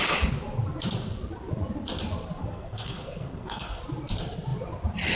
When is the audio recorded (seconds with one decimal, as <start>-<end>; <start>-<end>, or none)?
0.0-2.4; 3.8-5.2